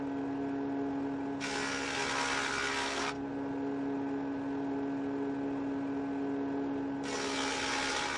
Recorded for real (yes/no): yes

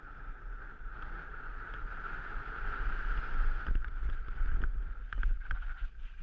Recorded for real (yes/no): yes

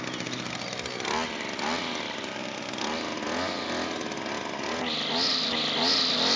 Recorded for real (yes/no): yes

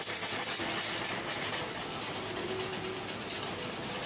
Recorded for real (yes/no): yes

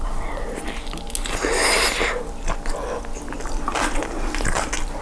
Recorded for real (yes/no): yes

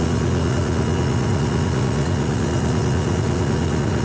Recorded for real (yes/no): no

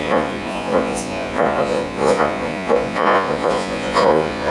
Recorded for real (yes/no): no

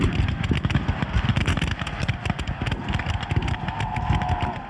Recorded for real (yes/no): yes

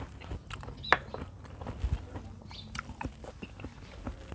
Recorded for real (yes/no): yes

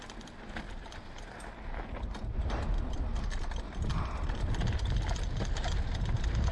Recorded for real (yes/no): yes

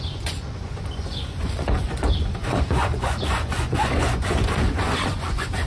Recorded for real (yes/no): no